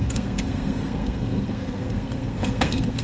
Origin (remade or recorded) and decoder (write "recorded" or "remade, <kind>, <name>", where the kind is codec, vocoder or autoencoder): remade, codec, SNAC